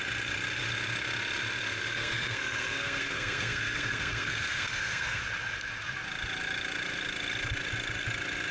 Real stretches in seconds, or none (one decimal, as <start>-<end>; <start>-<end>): 0.0-1.8; 5.2-8.5